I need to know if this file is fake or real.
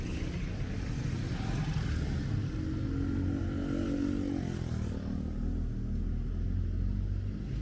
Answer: real